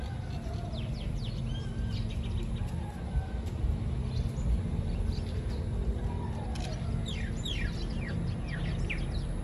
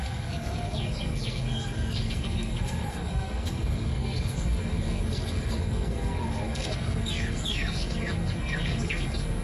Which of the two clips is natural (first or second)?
first